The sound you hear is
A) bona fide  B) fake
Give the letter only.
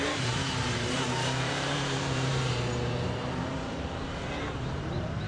B